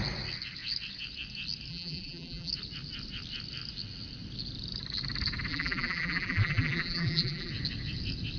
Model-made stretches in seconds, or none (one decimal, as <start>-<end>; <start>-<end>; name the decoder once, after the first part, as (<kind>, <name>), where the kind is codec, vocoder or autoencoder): 1.7-2.5 (vocoder, BigVGAN v2); 5.5-7.5